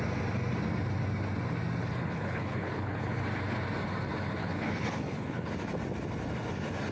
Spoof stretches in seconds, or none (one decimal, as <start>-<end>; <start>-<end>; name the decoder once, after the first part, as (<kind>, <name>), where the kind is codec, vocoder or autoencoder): 1.8-3.2 (codec, HILCodec); 4.4-5.5